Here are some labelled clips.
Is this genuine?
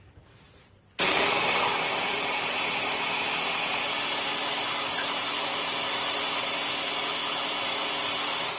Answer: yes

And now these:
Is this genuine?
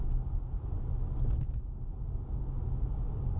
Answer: yes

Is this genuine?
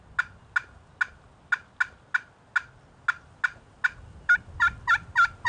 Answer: yes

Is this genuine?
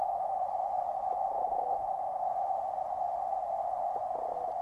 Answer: yes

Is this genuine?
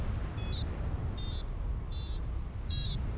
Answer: yes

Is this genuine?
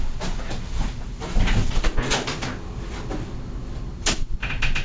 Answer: yes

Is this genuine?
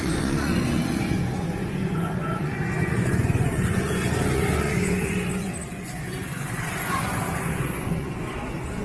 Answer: no